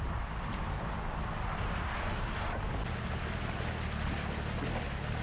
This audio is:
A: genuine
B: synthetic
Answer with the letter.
A